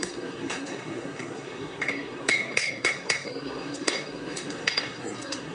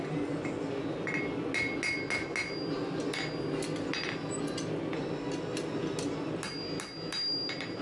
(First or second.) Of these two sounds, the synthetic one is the first